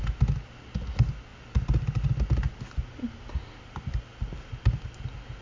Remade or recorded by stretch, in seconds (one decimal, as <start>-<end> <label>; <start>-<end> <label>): 0.0-5.4 recorded